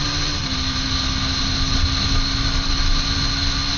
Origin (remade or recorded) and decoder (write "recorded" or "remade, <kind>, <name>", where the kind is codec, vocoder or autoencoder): recorded